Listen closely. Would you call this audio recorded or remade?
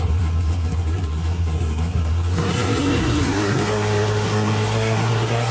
remade